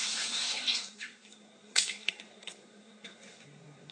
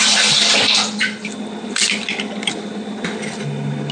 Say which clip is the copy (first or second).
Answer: first